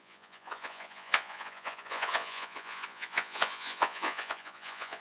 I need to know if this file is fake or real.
fake